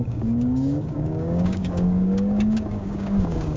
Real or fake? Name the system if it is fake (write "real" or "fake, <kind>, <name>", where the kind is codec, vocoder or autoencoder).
fake, codec, DAC